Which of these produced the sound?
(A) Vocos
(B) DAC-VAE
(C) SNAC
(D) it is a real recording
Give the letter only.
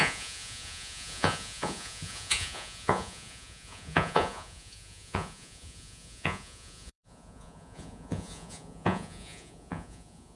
A